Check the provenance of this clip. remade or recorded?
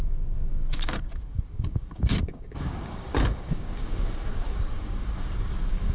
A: remade